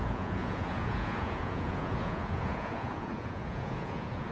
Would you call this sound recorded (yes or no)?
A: no